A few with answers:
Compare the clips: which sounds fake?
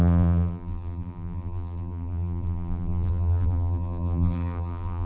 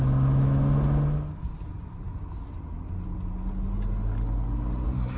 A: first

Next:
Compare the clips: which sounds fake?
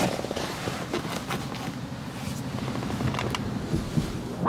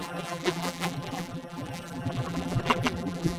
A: second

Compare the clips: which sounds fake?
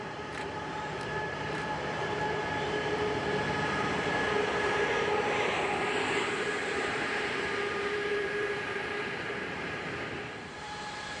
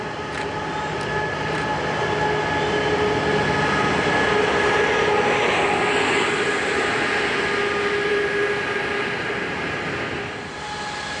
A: first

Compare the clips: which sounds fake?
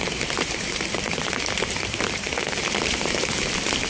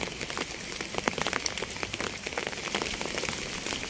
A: first